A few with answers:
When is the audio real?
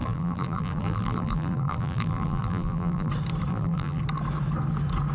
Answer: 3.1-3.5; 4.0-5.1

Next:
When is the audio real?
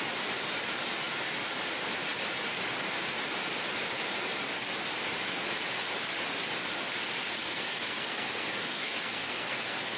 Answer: 0.0-7.4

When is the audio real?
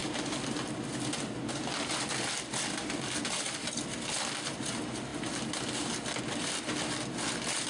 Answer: 0.0-7.7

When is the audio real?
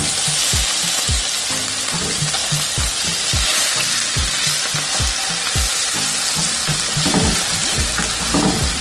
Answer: 0.0-6.6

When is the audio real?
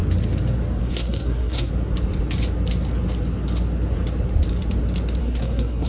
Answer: 0.0-0.8; 1.7-5.2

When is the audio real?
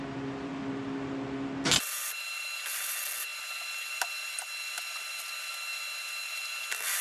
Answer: 0.0-7.0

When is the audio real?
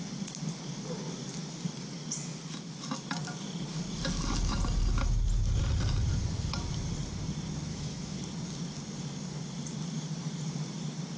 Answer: 0.0-7.7; 8.2-11.2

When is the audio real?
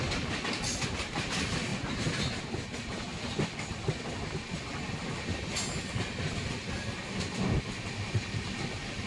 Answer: 0.0-9.1